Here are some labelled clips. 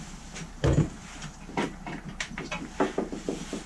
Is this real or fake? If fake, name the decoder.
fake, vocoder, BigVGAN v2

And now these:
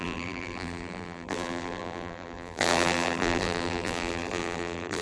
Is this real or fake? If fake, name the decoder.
fake, vocoder, BigVGAN v2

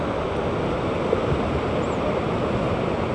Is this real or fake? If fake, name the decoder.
real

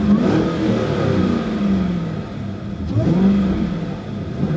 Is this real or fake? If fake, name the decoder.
real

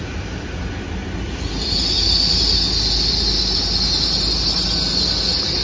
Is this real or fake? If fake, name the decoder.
real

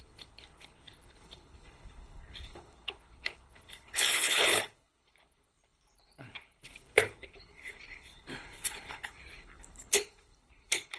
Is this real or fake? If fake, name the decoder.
fake, codec, HILCodec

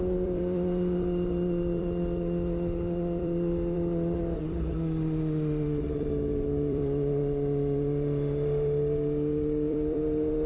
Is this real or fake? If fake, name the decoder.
fake, vocoder, BigVGAN v2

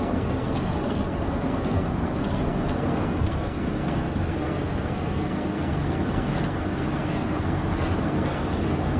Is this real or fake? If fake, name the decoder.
fake, codec, SNAC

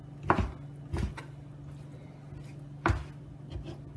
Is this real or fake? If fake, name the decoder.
real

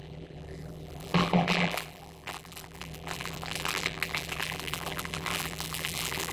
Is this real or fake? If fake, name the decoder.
fake, vocoder, BigVGAN v2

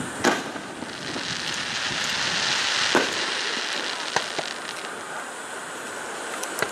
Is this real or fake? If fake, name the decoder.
real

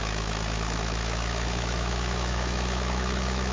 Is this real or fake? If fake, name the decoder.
fake, autoencoder, DAC-VAE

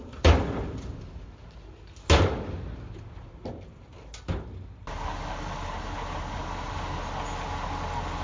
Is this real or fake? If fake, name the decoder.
real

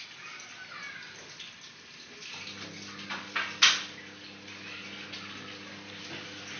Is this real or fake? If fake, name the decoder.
real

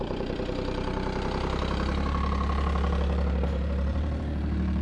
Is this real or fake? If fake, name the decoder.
fake, vocoder, BigVGAN v2